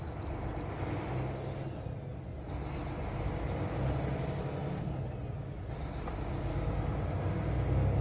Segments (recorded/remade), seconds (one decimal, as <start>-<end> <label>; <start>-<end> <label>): 0.0-8.0 recorded